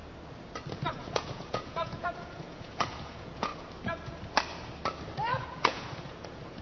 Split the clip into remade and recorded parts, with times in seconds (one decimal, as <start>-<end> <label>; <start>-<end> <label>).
0.0-0.8 recorded; 0.8-3.5 remade; 3.5-5.4 recorded; 5.4-6.6 remade

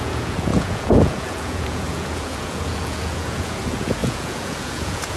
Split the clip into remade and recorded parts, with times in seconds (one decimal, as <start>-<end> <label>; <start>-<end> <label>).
0.0-5.2 remade

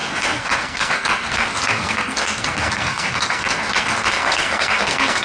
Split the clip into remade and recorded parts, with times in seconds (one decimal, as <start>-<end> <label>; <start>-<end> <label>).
0.0-5.2 remade

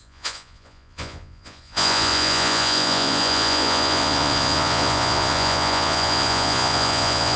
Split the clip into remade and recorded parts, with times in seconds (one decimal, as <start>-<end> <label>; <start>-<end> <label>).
0.0-7.4 remade

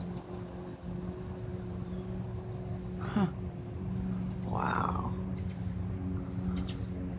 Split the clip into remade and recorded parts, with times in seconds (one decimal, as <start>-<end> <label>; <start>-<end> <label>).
0.0-7.2 recorded

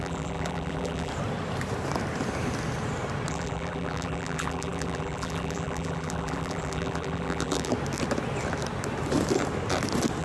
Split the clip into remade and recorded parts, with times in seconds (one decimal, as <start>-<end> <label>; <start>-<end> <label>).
0.0-1.1 remade; 1.1-3.3 recorded; 3.3-7.7 remade; 7.7-10.2 recorded

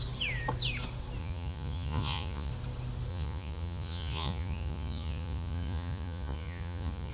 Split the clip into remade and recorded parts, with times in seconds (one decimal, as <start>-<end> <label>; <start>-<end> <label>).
0.0-1.2 recorded; 1.2-2.5 remade; 2.5-3.1 recorded; 3.1-7.1 remade

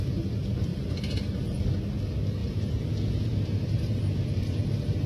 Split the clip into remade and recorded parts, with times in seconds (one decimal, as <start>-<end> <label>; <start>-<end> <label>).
0.0-0.7 recorded; 0.7-1.7 remade; 1.7-2.4 recorded; 2.4-4.5 remade; 4.5-5.1 recorded